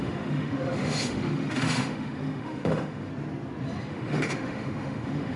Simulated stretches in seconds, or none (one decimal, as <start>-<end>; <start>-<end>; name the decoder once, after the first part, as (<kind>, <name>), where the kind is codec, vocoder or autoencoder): 0.0-3.1 (autoencoder, DAC-VAE); 3.9-5.4